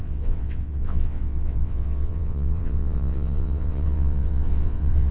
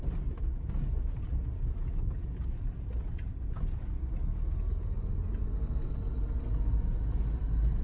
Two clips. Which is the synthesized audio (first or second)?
first